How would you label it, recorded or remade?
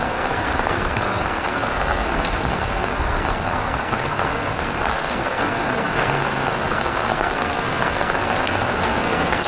remade